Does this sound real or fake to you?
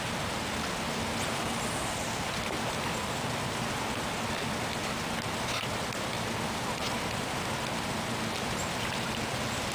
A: real